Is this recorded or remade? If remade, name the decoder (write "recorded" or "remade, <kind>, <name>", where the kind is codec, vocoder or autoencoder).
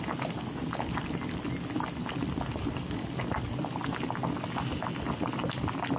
recorded